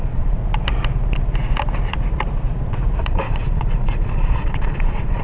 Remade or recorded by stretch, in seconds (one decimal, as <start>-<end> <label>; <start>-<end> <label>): 0.0-0.4 remade; 0.4-3.0 recorded; 3.0-5.2 remade